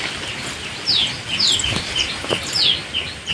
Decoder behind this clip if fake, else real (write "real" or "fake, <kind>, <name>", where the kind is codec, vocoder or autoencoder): real